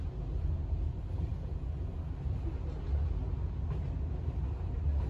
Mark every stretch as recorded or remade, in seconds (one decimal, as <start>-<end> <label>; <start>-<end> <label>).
0.0-5.1 recorded